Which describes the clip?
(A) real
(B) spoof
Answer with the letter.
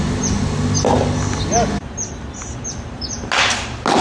A